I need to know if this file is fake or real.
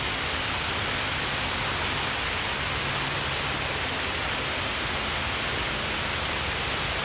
real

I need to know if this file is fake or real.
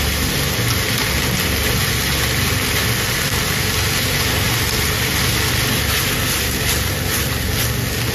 real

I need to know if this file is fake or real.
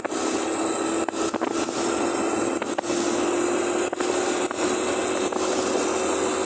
real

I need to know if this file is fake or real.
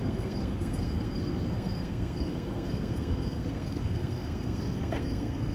fake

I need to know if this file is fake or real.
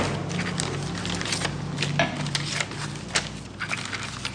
real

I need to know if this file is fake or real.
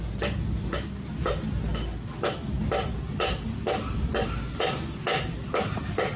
real